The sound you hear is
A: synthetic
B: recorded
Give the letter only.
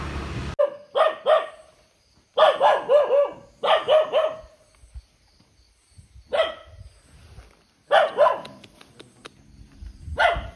B